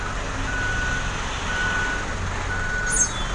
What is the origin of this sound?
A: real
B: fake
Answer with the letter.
A